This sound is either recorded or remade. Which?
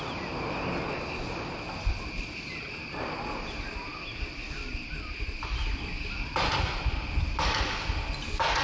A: recorded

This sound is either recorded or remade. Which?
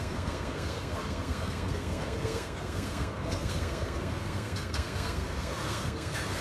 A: remade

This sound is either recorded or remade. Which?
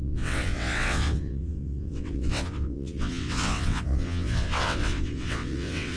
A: remade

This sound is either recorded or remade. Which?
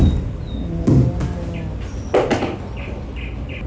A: recorded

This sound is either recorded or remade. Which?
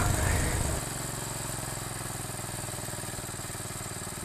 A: recorded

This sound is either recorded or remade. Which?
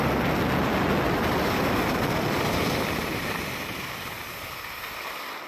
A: recorded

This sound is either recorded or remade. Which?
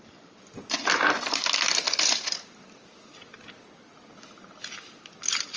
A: recorded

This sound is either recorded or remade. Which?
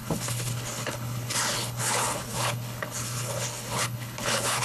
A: remade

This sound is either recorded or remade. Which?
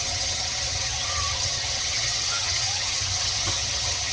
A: remade